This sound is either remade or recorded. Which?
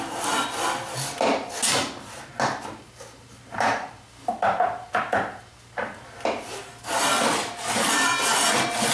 recorded